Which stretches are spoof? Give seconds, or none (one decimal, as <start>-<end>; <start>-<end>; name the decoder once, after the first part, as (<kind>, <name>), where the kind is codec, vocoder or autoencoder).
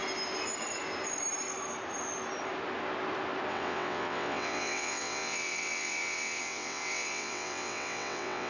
3.5-8.5 (vocoder, WaveNeXt)